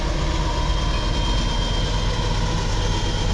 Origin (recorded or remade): recorded